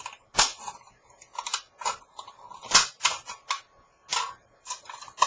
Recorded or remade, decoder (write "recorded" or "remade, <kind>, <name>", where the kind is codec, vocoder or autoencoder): recorded